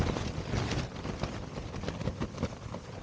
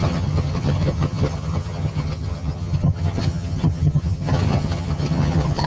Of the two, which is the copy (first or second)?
second